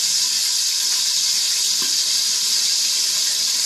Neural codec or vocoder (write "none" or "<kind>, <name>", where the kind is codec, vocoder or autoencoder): none